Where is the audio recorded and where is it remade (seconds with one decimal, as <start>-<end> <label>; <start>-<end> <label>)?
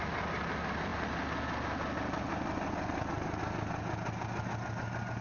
0.0-5.2 recorded